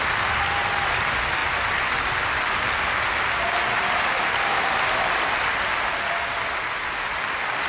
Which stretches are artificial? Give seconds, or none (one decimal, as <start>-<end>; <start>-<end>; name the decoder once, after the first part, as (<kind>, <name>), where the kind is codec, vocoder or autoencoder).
none

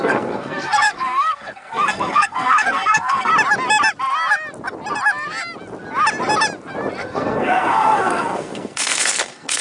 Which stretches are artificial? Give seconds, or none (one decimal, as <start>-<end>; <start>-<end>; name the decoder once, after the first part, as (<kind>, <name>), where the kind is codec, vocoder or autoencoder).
0.0-3.3 (codec, SNAC); 7.0-9.6